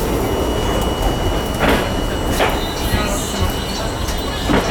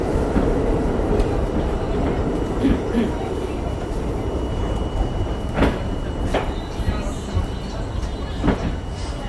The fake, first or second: second